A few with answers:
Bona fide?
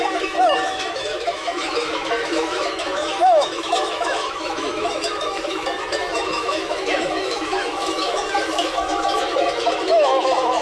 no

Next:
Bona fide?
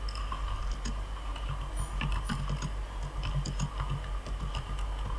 yes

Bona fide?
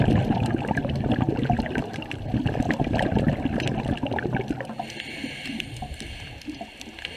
yes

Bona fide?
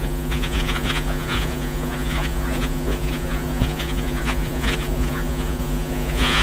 no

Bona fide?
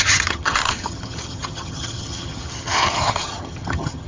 no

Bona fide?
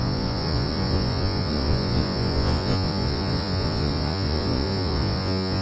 no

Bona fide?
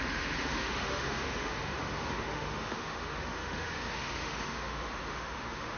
no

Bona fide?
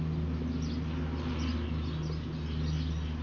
yes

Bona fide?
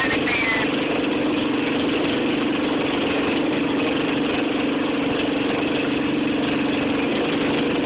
yes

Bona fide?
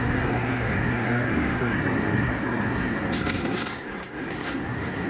no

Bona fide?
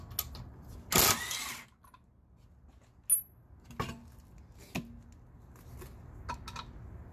yes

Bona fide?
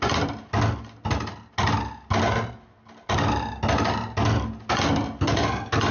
yes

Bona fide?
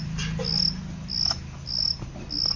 yes